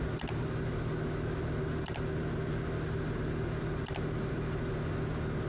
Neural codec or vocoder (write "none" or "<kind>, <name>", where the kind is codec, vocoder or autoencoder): none